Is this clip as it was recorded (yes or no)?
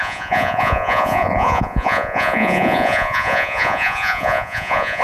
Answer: no